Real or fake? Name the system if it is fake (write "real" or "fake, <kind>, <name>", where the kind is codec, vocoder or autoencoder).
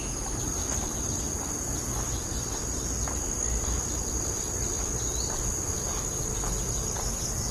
real